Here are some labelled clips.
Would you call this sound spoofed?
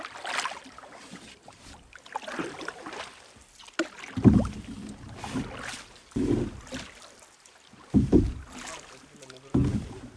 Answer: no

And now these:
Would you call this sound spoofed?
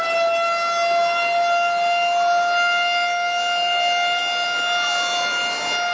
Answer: no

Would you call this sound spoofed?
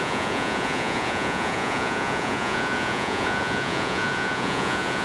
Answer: yes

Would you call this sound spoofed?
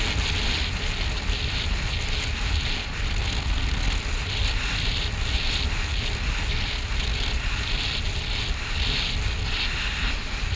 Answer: no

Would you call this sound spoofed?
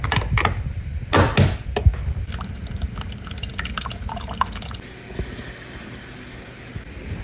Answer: no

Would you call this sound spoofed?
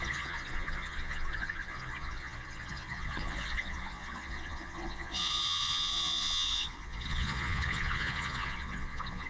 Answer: yes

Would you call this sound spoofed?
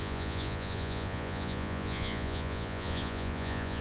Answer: yes